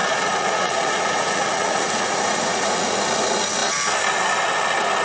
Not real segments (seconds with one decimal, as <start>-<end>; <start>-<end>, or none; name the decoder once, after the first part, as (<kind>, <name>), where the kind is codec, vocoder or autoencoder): 0.0-3.0 (vocoder, Vocos)